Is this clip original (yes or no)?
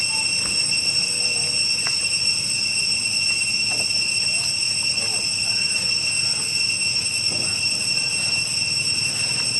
yes